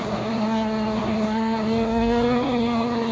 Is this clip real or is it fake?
fake